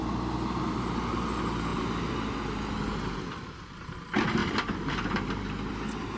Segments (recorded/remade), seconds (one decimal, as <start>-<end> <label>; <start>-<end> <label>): 0.0-4.4 recorded; 4.4-5.7 remade; 5.7-6.2 recorded